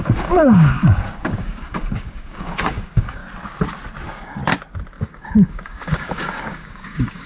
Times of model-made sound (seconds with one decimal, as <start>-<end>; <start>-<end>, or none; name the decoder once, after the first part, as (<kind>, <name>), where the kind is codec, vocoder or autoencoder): 0.0-3.2 (codec, DAC); 4.0-4.4; 5.0-7.3

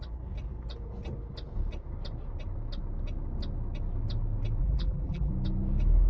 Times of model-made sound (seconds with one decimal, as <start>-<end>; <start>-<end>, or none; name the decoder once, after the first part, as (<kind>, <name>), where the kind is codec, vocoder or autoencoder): 4.6-5.3 (vocoder, BigVGAN v2)

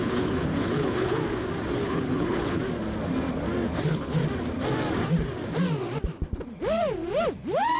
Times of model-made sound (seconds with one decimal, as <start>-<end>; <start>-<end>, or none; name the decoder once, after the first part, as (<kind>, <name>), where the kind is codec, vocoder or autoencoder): 0.0-1.2 (codec, HILCodec); 1.7-2.6; 3.8-4.2

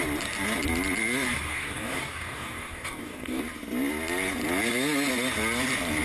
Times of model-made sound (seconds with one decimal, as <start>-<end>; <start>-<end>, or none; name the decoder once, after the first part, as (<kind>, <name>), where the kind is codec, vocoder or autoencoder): 1.5-3.4 (codec, DAC)

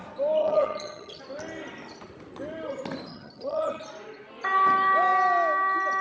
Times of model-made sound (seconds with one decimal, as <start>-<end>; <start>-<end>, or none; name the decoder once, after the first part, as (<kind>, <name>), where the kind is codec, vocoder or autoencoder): 0.4-1.2 (vocoder, HiFi-GAN); 3.1-3.8

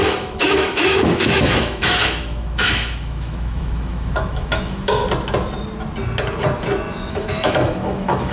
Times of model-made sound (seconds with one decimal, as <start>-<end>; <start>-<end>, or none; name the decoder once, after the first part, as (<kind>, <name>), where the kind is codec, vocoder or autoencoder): 0.0-5.0 (autoencoder, DAC-VAE); 7.1-8.3

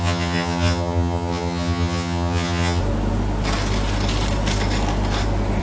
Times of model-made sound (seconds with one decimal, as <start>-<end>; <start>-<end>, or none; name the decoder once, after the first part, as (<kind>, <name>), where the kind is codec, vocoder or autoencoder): 0.0-2.8 (vocoder, HiFi-GAN)

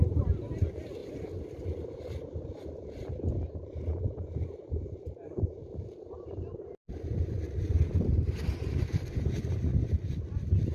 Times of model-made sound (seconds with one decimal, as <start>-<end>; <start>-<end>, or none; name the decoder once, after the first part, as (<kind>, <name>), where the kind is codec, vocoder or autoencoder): 0.0-1.0 (vocoder, BigVGAN v2); 4.2-5.6; 8.7-9.7